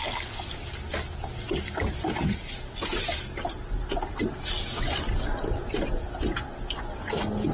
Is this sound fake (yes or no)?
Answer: no